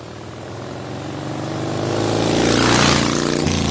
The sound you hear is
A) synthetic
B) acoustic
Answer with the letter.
B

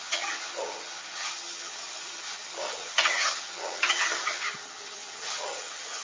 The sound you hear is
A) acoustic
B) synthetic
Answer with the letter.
B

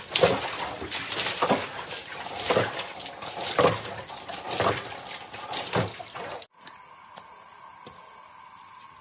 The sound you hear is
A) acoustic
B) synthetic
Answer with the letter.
A